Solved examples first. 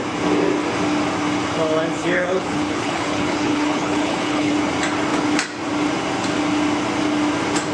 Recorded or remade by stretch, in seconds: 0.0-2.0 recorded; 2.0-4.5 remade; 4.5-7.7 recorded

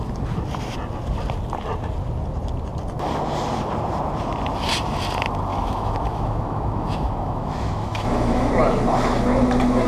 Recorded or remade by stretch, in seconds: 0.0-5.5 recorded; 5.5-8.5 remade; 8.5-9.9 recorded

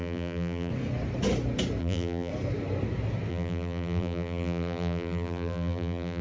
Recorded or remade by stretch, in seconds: 0.0-0.7 remade; 0.7-1.8 recorded; 1.8-2.3 remade; 2.3-3.3 recorded; 3.3-6.2 remade

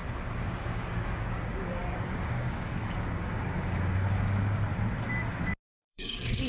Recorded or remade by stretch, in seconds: 0.0-4.7 remade; 4.7-5.7 recorded; 5.7-6.5 remade